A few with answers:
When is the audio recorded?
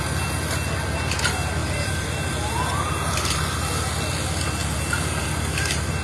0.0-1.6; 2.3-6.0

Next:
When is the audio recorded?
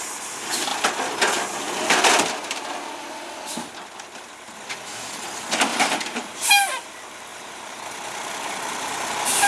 0.0-5.7; 6.5-7.3; 7.9-9.5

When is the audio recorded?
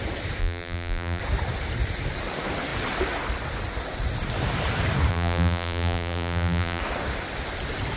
0.0-0.4; 1.2-5.1; 6.8-8.0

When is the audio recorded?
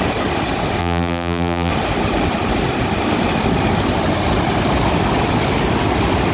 0.0-0.8; 1.7-6.3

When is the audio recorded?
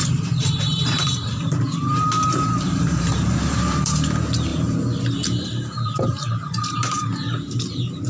none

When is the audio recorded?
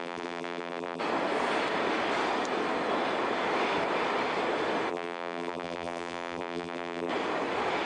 1.0-4.9; 7.1-7.9